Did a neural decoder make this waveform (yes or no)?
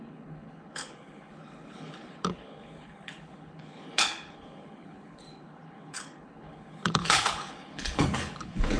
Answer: yes